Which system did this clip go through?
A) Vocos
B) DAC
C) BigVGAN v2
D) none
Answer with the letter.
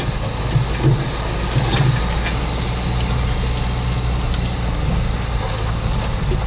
D